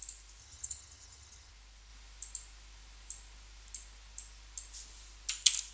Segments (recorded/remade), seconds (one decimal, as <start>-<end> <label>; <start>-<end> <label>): 0.0-0.4 recorded; 0.4-1.5 remade; 1.5-5.7 recorded